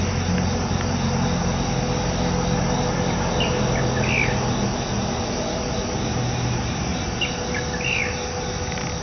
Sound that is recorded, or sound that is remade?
recorded